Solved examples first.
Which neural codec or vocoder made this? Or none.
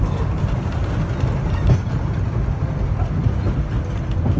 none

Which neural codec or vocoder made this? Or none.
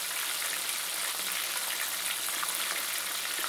none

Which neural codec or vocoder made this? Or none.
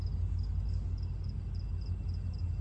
none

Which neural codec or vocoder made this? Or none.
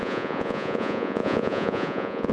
vocoder, Vocos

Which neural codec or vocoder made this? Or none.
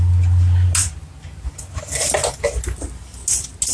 none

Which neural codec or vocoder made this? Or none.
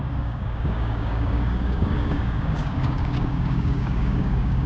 codec, DAC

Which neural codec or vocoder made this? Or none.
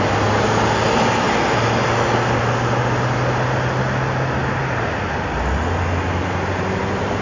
none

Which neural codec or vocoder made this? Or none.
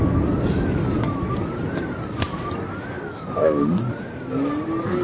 none